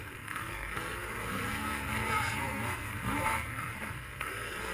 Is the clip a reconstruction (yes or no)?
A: yes